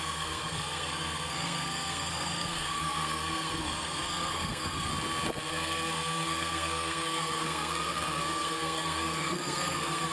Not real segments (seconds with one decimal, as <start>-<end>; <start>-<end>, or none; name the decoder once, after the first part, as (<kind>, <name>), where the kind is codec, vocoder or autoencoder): 0.0-4.9 (codec, SNAC); 5.5-10.1